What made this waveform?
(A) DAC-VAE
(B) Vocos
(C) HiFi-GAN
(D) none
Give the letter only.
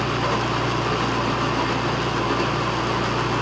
D